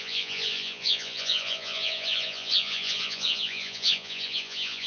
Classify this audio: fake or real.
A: fake